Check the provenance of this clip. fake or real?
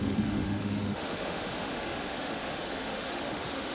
fake